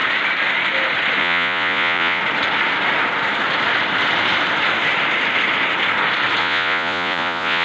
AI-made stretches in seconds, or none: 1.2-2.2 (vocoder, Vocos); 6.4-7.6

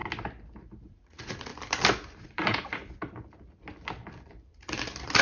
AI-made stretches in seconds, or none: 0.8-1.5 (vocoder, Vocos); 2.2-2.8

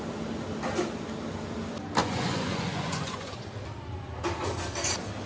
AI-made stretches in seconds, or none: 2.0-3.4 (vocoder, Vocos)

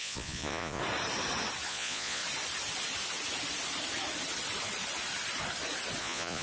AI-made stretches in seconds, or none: 0.0-0.8 (vocoder, Vocos); 1.7-2.2; 6.0-6.4

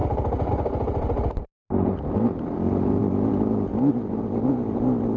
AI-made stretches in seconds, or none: none

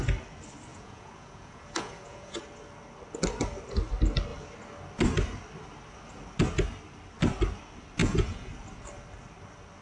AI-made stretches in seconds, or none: 0.7-2.4 (vocoder, Vocos); 8.0-8.5